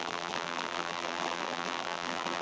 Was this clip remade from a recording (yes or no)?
yes